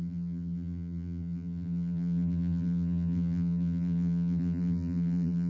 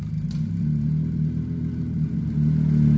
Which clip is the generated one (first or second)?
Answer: first